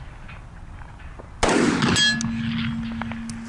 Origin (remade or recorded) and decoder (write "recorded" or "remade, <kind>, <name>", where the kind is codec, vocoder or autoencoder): recorded